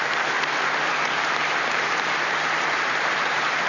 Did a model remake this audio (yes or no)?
yes